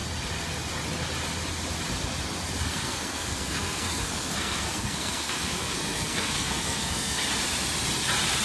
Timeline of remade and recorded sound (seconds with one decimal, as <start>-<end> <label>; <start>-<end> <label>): 0.0-2.7 recorded; 2.7-7.2 remade; 7.2-8.4 recorded